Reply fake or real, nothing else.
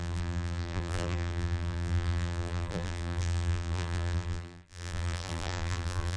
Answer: fake